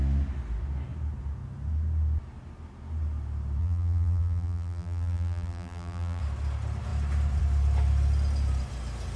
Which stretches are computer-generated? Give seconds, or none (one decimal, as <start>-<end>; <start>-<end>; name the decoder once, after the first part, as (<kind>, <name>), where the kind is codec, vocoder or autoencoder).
3.6-6.2 (vocoder, BigVGAN v2)